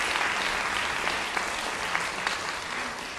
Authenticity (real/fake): real